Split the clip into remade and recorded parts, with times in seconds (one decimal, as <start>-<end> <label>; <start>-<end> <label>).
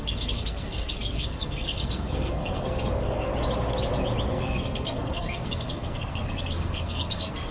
0.0-3.3 remade; 3.3-4.3 recorded; 4.3-7.5 remade